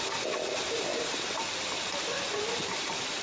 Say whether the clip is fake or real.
real